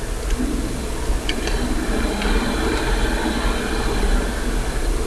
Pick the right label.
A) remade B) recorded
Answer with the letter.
B